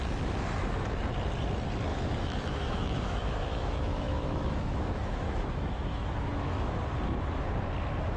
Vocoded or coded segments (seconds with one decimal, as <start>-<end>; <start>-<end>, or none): 1.9-6.8